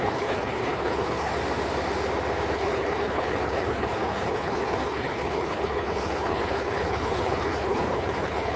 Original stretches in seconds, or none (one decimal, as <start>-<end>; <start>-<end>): 1.3-2.5

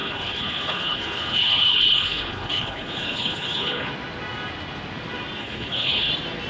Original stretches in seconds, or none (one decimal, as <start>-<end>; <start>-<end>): 3.9-5.4; 6.1-6.5

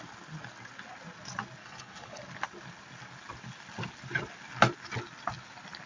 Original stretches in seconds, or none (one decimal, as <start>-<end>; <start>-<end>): 0.0-1.6; 2.2-5.9

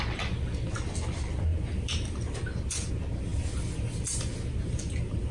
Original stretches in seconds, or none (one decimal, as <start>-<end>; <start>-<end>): 0.0-5.3

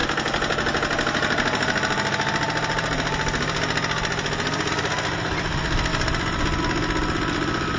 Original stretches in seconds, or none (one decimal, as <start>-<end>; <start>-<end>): 0.0-7.8

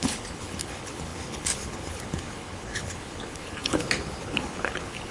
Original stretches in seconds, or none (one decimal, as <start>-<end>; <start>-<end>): none

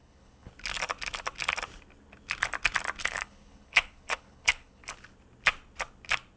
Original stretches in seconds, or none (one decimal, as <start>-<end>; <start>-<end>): 0.5-3.0; 4.8-6.4

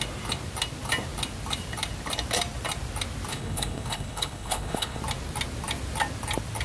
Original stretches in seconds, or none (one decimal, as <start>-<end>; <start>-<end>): 0.0-3.3; 5.0-6.6